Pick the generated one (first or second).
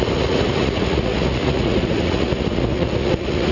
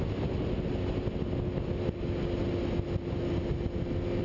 first